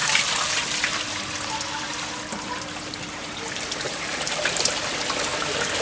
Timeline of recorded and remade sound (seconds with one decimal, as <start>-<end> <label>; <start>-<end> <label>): 0.0-5.8 recorded